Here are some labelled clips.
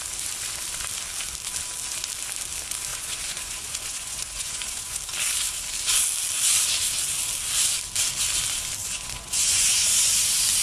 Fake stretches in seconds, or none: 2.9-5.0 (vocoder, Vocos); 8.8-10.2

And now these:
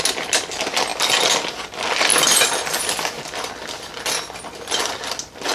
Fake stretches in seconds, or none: none